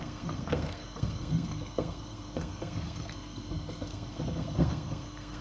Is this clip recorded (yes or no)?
no